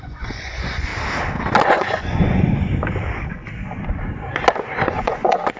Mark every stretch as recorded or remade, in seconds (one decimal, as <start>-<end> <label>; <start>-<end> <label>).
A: 0.0-0.9 remade; 0.9-1.6 recorded; 1.6-2.7 remade; 2.7-4.9 recorded; 4.9-5.6 remade